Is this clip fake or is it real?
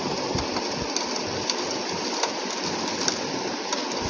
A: real